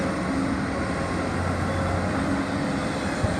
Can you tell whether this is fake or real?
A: real